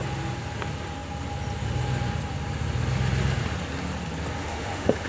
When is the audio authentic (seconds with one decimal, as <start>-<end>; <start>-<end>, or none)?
0.0-4.4